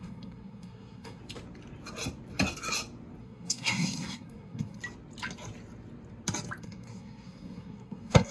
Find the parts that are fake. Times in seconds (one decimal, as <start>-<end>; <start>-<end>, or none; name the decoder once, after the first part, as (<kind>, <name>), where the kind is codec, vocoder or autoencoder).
0.0-1.2 (codec, SNAC); 3.2-4.8; 6.6-8.3